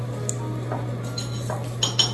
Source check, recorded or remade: recorded